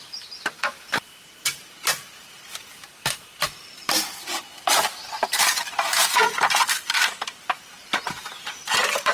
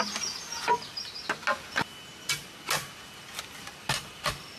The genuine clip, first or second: second